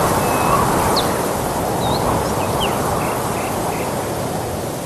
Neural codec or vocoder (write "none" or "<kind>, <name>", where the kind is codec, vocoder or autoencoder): none